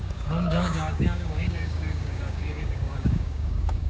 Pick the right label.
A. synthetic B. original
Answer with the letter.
A